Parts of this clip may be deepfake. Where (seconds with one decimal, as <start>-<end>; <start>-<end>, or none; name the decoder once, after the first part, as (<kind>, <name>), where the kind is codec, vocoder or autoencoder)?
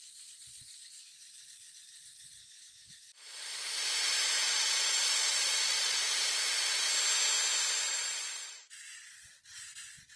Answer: 0.0-2.4 (vocoder, Vocos); 4.4-6.1; 7.9-10.2